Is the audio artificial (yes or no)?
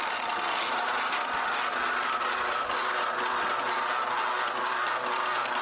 no